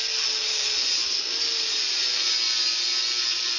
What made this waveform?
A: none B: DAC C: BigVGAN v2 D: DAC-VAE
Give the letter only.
A